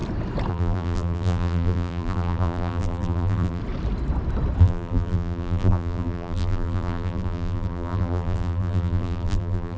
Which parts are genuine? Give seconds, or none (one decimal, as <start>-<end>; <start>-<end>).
0.0-0.5; 3.6-4.6